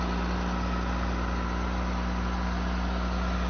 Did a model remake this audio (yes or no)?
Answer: no